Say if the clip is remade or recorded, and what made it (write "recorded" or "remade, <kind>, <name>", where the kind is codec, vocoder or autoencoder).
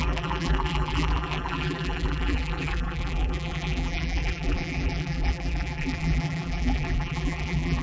remade, vocoder, BigVGAN v2